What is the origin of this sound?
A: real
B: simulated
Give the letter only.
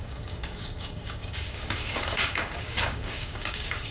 B